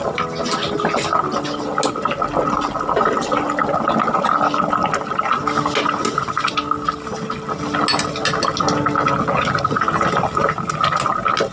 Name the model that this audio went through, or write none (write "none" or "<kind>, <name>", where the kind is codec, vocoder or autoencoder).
none